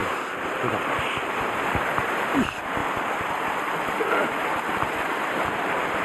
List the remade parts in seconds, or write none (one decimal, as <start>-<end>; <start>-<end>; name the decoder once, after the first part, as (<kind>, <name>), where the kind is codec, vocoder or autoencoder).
none

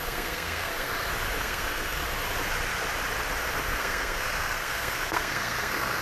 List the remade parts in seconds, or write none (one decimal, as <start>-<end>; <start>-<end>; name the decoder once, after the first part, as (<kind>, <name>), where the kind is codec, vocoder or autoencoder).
0.0-0.9 (codec, SNAC); 1.4-2.0; 3.7-6.0

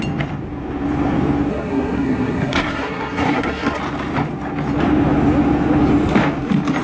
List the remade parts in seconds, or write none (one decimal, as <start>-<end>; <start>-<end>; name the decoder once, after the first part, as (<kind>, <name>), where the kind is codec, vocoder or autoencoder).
1.5-3.8 (codec, SNAC)